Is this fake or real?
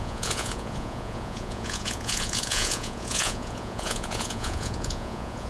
fake